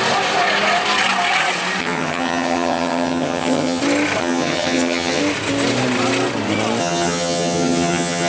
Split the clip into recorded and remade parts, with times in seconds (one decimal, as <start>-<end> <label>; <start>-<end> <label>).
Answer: 0.0-1.8 recorded; 1.8-3.8 remade; 3.8-4.2 recorded; 4.2-5.2 remade; 5.2-6.8 recorded; 6.8-8.3 remade